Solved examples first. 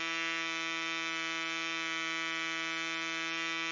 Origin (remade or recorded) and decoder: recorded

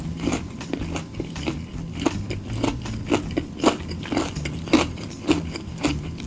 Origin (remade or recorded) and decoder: recorded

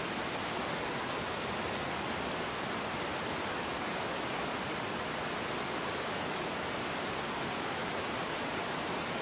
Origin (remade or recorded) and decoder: recorded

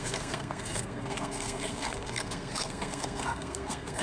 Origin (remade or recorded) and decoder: remade, codec, SNAC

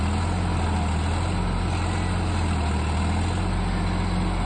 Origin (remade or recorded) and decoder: recorded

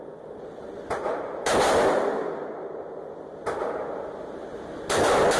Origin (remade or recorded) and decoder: recorded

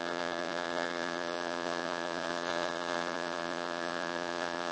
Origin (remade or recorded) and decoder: remade, vocoder, Vocos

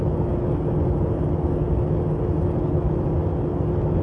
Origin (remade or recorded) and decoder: recorded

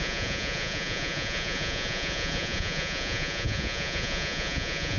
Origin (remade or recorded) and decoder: remade, vocoder, Vocos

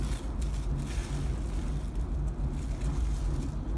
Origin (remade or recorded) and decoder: recorded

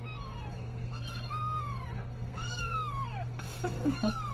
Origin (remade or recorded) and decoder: remade, codec, SNAC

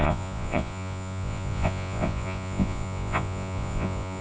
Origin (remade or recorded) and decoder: remade, vocoder, Vocos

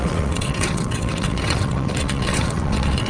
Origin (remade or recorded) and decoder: remade, vocoder, WaveNeXt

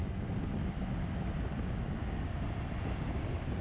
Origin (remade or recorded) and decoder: remade, vocoder, BigVGAN v2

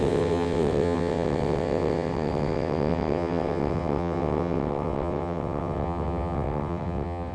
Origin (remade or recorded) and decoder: remade, vocoder, WaveNeXt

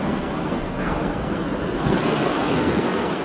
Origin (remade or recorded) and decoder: remade, codec, SNAC